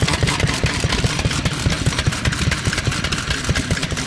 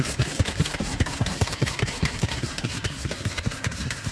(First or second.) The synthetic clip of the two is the second